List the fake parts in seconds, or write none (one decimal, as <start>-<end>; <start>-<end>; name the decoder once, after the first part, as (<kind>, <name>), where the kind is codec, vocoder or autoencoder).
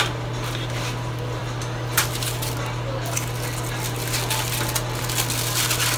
none